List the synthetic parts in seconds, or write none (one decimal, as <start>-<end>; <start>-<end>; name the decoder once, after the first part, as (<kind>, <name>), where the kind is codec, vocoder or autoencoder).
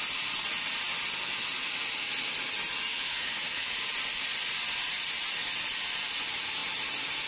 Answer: 2.9-3.7 (autoencoder, DAC-VAE)